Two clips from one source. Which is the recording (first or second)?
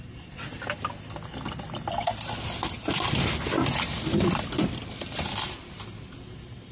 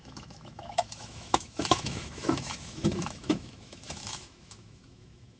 first